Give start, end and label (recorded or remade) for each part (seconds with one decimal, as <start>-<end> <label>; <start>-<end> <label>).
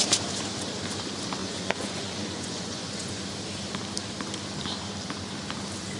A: 0.0-1.4 recorded; 1.4-3.2 remade; 3.2-6.0 recorded